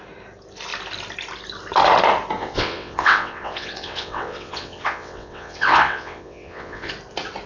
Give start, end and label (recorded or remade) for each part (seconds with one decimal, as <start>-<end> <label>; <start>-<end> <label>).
0.0-2.4 recorded; 2.4-6.9 remade; 6.9-7.5 recorded